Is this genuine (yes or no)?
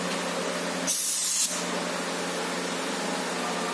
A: yes